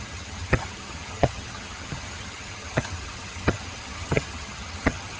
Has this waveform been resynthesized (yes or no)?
yes